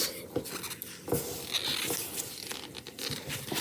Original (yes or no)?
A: yes